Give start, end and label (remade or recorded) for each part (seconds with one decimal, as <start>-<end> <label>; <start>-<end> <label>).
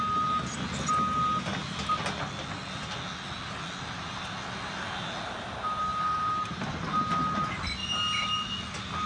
0.0-9.1 recorded